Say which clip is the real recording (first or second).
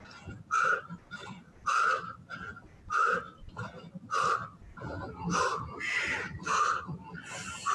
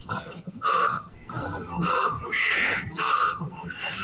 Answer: first